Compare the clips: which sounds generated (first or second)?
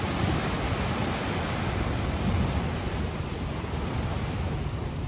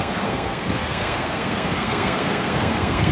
second